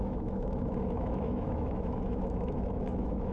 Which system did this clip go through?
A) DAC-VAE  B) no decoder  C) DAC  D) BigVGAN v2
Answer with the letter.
A